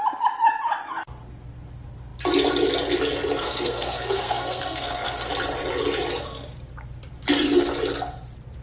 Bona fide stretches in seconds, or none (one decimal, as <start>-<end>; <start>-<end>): 0.0-3.4; 5.3-8.6